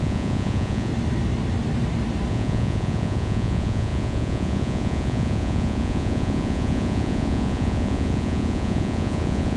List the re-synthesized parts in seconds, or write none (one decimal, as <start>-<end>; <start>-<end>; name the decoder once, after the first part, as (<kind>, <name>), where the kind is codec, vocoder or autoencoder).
0.0-0.9 (vocoder, Vocos); 2.3-9.6